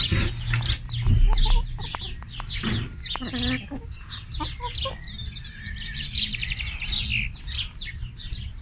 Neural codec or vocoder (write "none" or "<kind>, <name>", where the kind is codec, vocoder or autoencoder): none